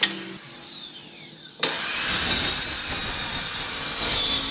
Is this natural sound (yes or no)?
yes